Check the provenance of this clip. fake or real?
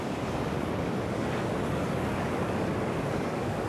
fake